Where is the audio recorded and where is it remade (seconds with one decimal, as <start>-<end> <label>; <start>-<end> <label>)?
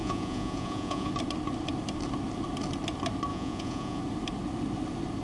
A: 0.0-1.1 remade; 1.1-3.3 recorded; 3.3-4.0 remade; 4.0-5.2 recorded